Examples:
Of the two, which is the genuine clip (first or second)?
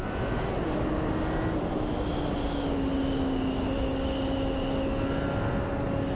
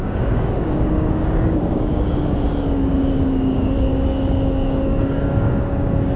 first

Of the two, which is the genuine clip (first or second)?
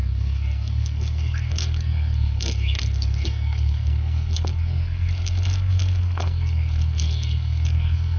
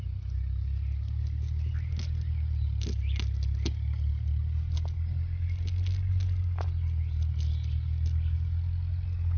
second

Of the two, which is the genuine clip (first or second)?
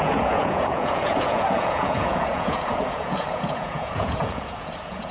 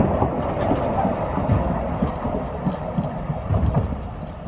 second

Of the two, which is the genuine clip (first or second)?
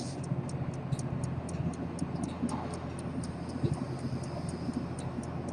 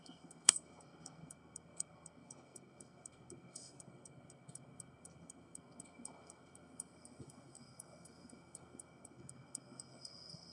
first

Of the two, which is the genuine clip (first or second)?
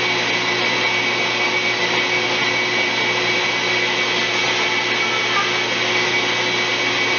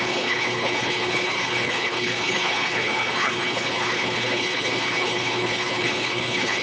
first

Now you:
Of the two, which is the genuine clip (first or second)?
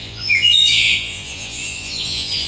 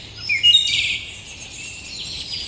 second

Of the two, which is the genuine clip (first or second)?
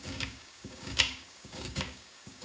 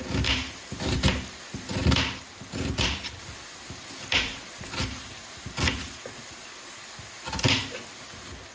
second